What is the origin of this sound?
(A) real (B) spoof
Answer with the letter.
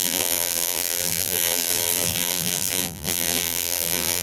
B